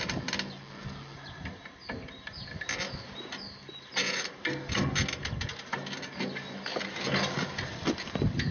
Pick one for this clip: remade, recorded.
recorded